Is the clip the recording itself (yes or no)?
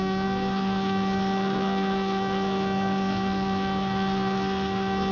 no